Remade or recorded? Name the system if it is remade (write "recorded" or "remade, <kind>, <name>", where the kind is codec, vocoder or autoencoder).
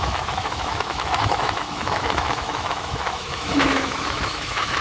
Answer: remade, autoencoder, DAC-VAE